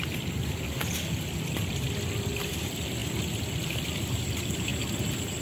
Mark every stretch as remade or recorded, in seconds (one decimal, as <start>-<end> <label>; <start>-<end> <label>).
0.0-5.4 recorded